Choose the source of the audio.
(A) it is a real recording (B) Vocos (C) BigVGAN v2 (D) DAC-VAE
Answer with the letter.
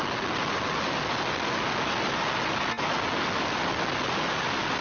A